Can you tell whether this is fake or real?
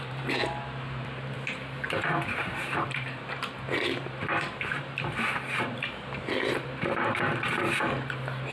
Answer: fake